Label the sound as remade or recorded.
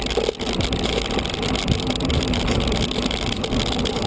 recorded